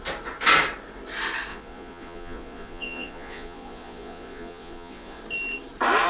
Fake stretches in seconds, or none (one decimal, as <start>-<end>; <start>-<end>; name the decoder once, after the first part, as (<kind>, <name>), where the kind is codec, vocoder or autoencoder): 1.5-5.2 (vocoder, Vocos)